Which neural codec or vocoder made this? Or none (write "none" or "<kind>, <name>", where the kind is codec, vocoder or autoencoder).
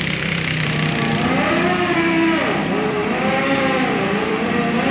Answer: vocoder, BigVGAN v2